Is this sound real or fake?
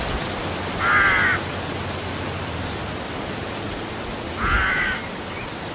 real